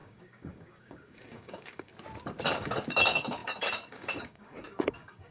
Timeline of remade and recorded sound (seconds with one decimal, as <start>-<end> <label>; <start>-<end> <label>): 0.0-1.9 remade; 1.9-2.5 recorded; 2.5-5.3 remade